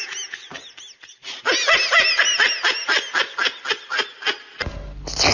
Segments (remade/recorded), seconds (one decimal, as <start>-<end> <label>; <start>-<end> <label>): 0.0-5.3 recorded